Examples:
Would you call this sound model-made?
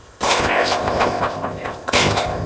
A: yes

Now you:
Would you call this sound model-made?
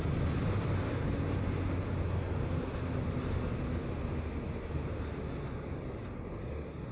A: no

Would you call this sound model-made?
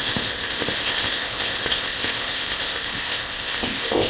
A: yes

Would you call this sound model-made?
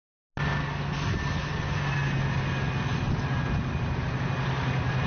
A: no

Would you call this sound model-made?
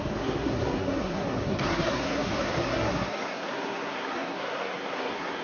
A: yes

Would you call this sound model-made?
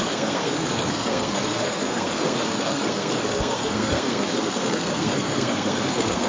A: yes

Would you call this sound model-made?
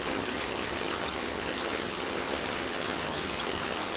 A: yes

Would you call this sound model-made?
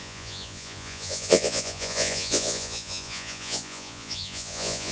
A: yes